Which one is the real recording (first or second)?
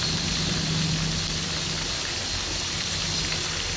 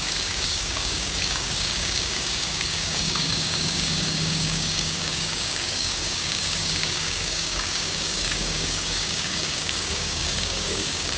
first